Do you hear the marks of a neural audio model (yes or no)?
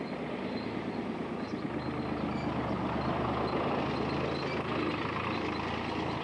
no